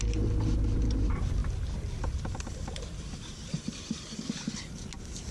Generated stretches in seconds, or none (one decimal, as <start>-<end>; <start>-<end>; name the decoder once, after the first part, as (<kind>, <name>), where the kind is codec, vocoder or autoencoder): none